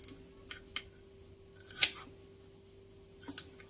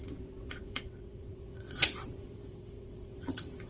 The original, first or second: first